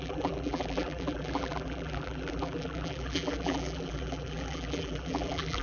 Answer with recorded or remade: remade